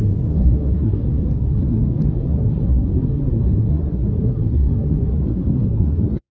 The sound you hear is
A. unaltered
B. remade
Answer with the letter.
B